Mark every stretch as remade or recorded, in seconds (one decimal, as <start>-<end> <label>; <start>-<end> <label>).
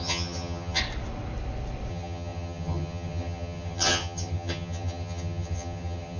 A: 0.0-0.8 remade; 0.8-1.9 recorded; 1.9-6.2 remade